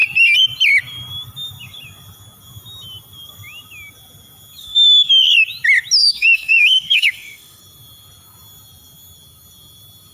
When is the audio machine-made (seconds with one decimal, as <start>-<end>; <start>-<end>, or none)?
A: 4.6-5.1; 6.0-7.6